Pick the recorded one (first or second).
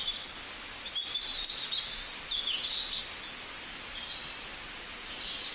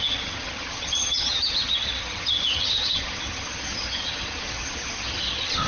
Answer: first